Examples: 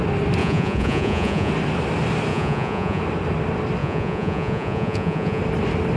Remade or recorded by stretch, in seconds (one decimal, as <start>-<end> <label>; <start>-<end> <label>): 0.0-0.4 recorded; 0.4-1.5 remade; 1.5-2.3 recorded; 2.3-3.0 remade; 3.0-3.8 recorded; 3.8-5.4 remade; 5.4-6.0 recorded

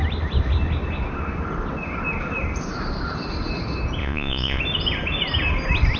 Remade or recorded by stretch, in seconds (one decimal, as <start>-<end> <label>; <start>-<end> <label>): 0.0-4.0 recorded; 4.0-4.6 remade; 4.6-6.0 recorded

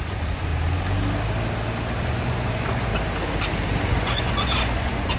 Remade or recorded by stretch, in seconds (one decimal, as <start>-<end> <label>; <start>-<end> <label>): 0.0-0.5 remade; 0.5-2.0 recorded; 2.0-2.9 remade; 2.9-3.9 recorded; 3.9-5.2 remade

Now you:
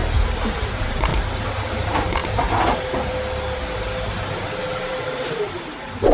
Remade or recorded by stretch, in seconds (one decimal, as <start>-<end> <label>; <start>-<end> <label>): 0.0-0.7 recorded; 0.7-1.1 remade; 1.1-1.7 recorded; 1.7-2.2 remade; 2.2-4.8 recorded; 4.8-6.1 remade

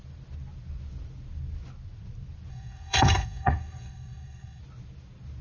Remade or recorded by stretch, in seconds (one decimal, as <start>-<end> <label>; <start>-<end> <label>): 0.0-2.5 recorded; 2.5-4.6 remade; 4.6-5.4 recorded

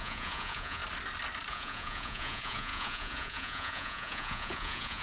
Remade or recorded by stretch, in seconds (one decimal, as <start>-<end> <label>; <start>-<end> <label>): 0.0-0.8 remade; 0.8-1.5 recorded; 1.5-5.0 remade

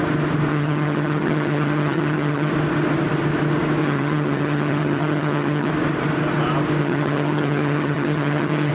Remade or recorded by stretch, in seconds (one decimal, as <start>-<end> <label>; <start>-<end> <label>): 0.0-0.5 recorded; 0.5-2.5 remade; 2.5-3.8 recorded; 3.8-5.7 remade; 5.7-6.8 recorded; 6.8-8.7 remade